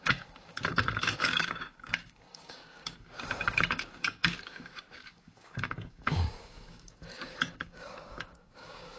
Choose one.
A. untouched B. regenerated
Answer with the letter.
B